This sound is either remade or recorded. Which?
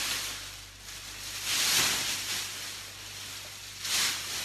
recorded